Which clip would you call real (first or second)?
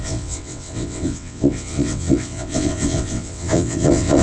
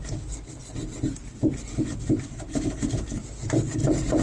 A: second